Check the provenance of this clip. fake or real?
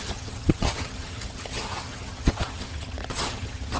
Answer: fake